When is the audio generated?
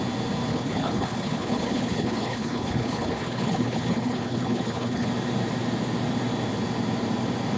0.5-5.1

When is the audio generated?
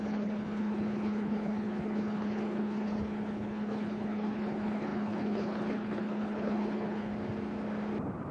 0.0-7.1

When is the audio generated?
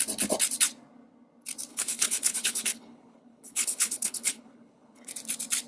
1.7-5.1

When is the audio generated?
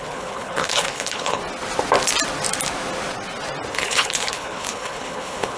0.0-1.4; 3.7-5.6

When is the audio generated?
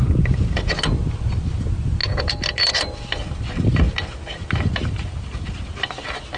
none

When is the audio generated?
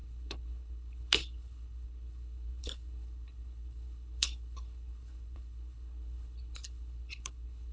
0.0-7.7